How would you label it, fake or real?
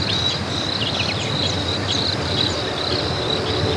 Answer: real